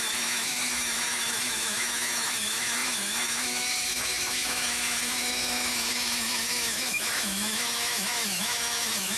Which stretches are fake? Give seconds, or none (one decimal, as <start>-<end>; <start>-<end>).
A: 0.0-9.2

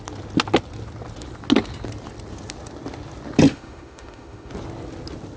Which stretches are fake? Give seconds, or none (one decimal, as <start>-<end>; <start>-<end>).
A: 3.5-4.5

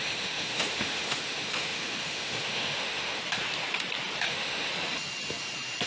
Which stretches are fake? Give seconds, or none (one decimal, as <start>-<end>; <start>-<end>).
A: 0.0-3.2; 4.3-4.7

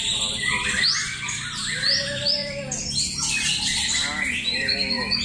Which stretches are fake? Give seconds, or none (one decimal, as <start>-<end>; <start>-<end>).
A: none

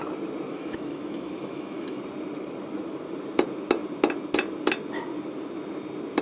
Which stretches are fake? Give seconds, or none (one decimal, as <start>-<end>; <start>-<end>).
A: 0.5-2.0

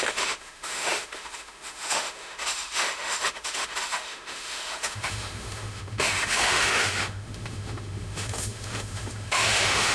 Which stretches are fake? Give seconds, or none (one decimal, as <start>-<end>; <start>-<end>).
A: 0.0-9.9

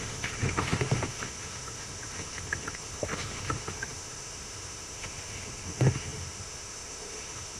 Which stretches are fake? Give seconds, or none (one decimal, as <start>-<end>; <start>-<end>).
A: 0.0-7.6